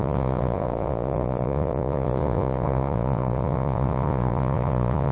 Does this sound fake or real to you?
fake